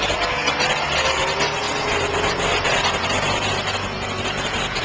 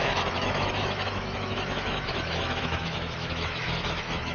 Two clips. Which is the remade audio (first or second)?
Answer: second